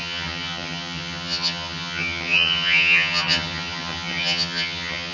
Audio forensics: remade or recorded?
remade